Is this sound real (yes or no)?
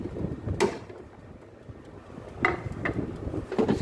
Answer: yes